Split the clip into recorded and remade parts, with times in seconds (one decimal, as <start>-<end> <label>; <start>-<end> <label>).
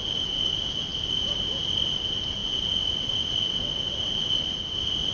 0.0-5.1 recorded